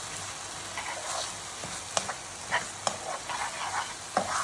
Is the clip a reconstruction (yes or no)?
no